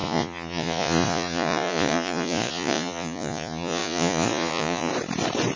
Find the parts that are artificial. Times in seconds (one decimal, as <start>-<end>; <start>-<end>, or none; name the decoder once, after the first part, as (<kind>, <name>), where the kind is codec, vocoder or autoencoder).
0.0-4.9 (vocoder, Vocos)